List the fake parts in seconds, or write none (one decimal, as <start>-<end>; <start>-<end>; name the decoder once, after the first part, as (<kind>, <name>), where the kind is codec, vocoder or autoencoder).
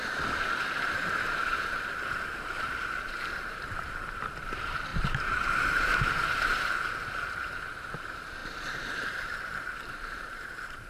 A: 0.0-10.9 (vocoder, BigVGAN v2)